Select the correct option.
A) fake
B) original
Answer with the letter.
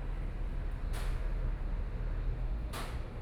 B